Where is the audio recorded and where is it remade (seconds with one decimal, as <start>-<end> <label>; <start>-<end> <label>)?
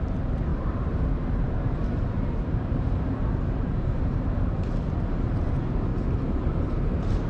0.0-5.9 remade; 5.9-6.6 recorded; 6.6-7.3 remade